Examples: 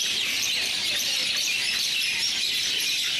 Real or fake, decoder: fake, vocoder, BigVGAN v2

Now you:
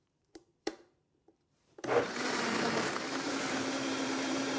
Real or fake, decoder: fake, vocoder, BigVGAN v2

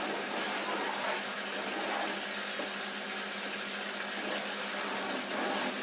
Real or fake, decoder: real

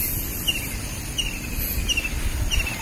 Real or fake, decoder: real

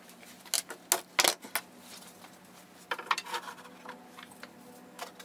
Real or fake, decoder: real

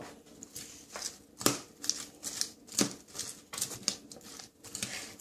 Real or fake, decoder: real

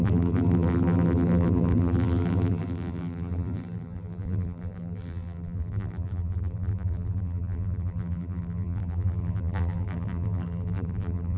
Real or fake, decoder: fake, vocoder, BigVGAN v2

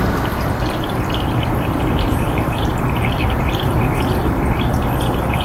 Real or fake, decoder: fake, vocoder, BigVGAN v2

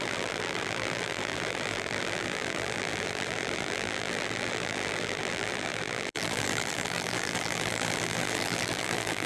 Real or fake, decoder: fake, vocoder, BigVGAN v2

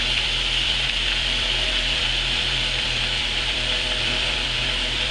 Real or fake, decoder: fake, vocoder, BigVGAN v2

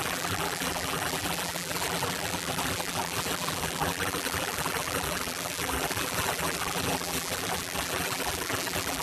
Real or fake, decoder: fake, vocoder, BigVGAN v2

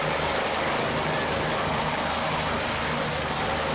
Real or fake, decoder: real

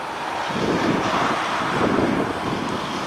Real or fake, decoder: real